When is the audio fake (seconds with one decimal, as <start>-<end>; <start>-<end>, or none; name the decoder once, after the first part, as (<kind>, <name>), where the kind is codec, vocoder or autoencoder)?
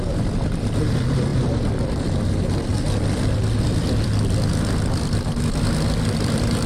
0.0-6.7 (vocoder, BigVGAN v2)